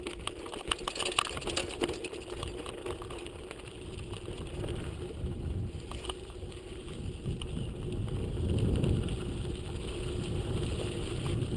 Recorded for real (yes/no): yes